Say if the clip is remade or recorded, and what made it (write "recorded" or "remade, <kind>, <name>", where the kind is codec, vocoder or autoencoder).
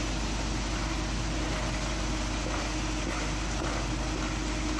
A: recorded